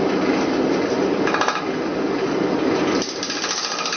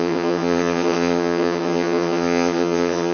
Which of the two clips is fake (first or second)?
second